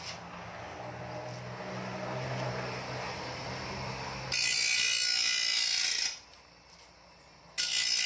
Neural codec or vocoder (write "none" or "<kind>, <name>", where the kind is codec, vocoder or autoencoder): none